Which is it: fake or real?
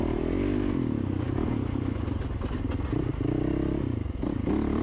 real